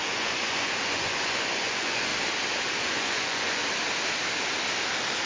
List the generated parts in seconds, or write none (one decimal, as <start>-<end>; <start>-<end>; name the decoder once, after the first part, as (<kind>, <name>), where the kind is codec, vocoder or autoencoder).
0.0-2.1 (vocoder, Vocos); 2.8-3.6